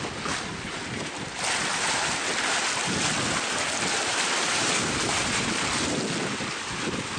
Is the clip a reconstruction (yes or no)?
no